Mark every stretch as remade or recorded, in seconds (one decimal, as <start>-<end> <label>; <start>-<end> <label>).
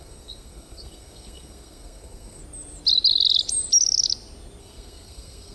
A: 0.0-2.4 remade; 2.4-4.6 recorded; 4.6-5.5 remade